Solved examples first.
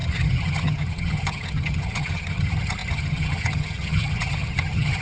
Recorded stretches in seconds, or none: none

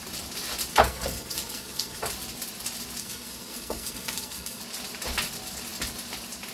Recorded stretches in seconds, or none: 0.0-0.7; 2.0-3.0; 4.6-6.5

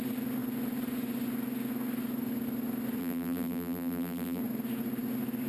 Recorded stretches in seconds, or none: 0.0-3.0; 4.4-5.5

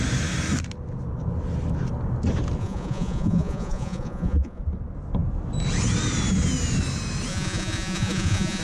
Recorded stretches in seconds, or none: 0.0-2.6; 4.6-7.3

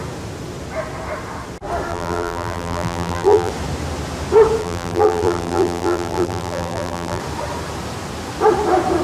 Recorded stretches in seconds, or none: 0.0-1.9; 3.5-4.6; 7.2-9.0

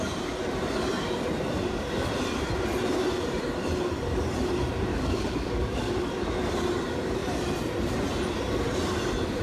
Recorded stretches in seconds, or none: 0.0-4.9; 6.1-9.4